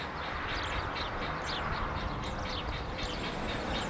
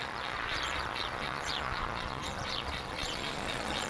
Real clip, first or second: first